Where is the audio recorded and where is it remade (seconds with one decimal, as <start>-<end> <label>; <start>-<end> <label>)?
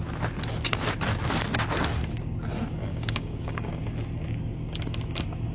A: 0.0-2.9 recorded; 2.9-3.7 remade; 3.7-5.5 recorded